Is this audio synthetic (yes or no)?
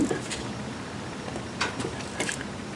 no